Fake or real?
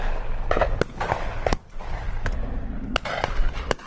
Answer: real